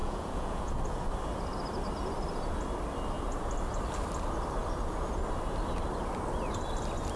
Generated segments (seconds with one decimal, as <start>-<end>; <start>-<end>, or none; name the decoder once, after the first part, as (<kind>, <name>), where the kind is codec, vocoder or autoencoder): 0.0-0.7 (vocoder, Vocos)